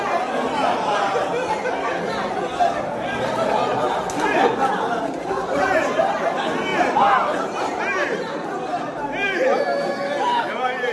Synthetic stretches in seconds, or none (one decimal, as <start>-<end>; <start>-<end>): none